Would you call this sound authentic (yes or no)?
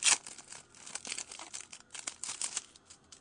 yes